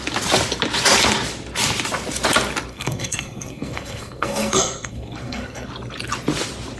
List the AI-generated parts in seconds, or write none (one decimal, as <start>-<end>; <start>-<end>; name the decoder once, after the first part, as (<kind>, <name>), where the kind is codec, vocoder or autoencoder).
2.7-5.7 (codec, SNAC)

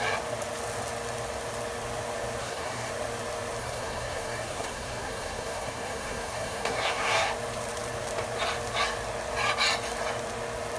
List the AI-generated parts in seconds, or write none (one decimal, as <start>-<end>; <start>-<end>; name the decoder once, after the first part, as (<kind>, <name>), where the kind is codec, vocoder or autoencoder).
2.4-2.9 (codec, SNAC); 3.6-7.3

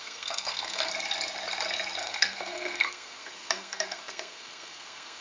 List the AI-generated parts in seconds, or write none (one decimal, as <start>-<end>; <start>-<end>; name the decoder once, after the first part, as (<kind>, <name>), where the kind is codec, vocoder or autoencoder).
0.0-0.9 (codec, SNAC); 2.0-5.2

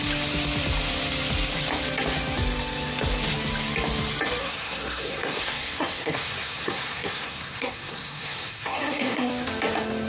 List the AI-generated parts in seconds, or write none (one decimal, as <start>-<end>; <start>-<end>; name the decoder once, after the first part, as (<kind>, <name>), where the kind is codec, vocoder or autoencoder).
4.4-9.3 (codec, SNAC)

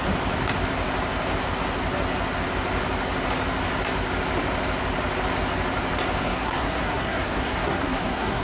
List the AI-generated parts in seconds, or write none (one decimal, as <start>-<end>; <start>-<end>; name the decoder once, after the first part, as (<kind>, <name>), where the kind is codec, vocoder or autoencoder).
6.2-8.4 (codec, SNAC)

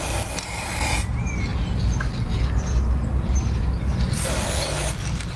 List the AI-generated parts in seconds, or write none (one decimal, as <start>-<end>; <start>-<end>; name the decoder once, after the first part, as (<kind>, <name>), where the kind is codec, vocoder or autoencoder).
none